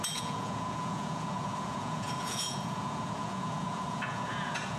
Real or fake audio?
fake